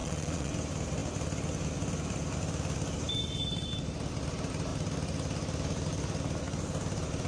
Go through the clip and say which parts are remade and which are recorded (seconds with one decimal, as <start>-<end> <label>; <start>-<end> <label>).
0.0-0.5 remade; 0.5-7.3 recorded